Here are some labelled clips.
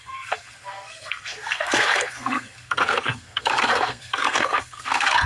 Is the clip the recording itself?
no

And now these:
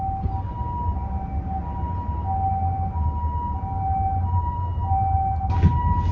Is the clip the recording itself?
yes